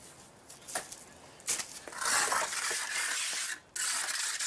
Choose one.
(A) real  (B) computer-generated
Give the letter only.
A